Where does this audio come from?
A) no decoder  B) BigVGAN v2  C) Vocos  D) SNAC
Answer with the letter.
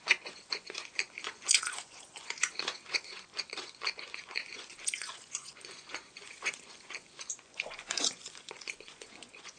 C